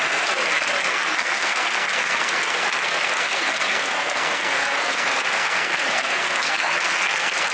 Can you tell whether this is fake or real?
fake